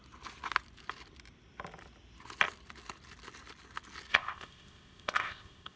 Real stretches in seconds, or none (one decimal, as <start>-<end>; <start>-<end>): 0.0-4.1